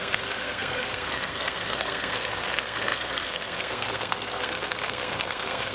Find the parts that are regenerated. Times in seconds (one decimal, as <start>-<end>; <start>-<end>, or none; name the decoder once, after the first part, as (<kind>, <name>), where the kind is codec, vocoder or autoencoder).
0.0-5.7 (codec, SNAC)